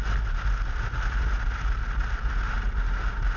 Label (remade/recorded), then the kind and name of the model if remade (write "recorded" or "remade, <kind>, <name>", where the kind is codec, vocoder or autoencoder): recorded